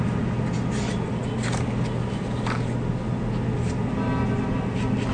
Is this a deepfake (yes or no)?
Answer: no